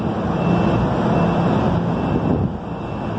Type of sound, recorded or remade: recorded